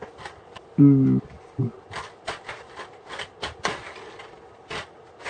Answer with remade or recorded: recorded